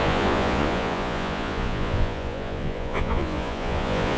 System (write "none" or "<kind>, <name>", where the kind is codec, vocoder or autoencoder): vocoder, Vocos